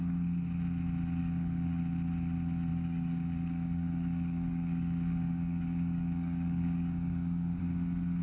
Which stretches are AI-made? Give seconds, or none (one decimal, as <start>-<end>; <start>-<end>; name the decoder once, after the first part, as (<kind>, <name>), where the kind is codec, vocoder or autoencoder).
1.2-1.8 (codec, DAC); 2.7-7.6